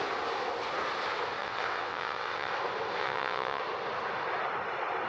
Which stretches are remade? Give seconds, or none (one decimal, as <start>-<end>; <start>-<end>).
1.4-2.5; 3.0-3.6